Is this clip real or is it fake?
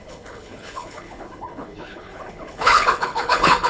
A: fake